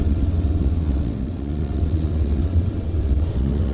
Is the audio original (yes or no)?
no